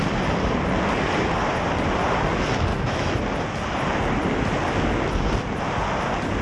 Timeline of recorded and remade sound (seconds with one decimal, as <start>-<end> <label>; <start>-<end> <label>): 0.0-2.7 recorded; 2.7-3.2 remade; 3.2-6.4 recorded